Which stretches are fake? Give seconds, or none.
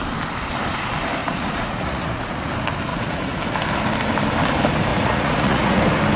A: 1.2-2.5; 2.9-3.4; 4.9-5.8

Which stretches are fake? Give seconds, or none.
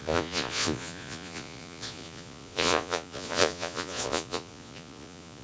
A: 0.0-5.4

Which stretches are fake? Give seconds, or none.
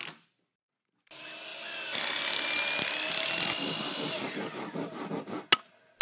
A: none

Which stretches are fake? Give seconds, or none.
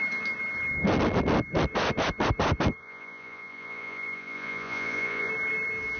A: 2.8-5.3